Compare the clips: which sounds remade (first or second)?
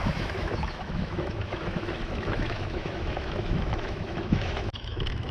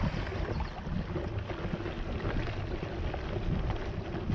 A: first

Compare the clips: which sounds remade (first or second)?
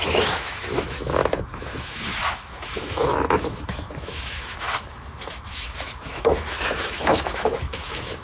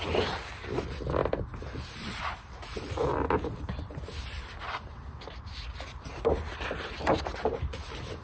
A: first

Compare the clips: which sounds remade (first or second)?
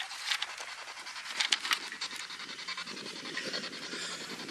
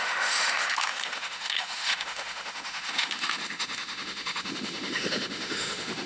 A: second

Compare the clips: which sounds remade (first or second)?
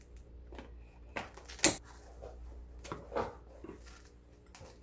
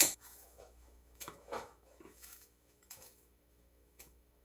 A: second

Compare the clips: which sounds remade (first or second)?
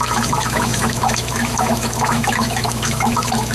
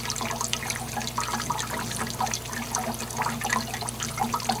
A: first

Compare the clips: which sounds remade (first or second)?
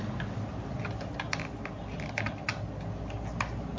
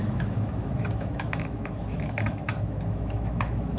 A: second